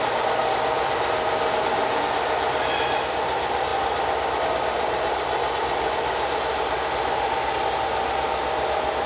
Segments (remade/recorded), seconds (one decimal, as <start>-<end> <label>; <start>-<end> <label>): 0.0-9.1 recorded

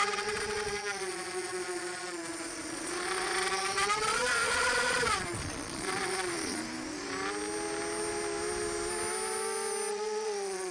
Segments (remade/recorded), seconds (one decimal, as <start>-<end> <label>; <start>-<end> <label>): 0.0-6.6 remade; 6.6-9.9 recorded; 9.9-10.7 remade